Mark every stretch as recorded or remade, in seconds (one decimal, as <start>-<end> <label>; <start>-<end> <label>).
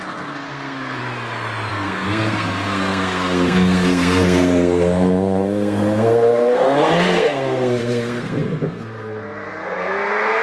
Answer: 0.0-1.0 remade; 1.0-1.7 recorded; 1.7-10.4 remade